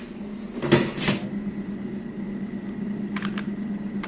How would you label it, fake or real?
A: real